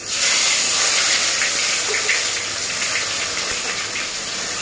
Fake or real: real